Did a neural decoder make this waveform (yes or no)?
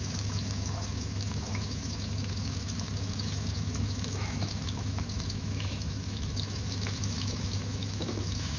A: yes